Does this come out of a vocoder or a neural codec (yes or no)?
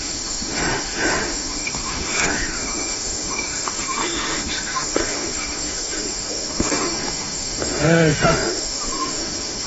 yes